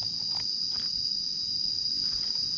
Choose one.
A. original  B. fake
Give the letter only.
A